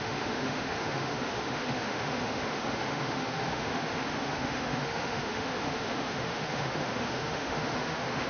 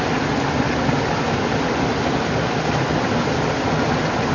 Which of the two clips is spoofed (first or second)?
first